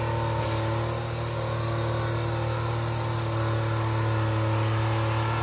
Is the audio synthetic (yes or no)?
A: no